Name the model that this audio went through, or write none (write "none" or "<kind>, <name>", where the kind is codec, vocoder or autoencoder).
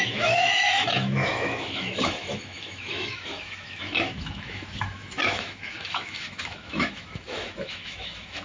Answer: autoencoder, DAC-VAE